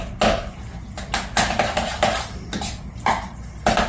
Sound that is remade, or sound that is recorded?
recorded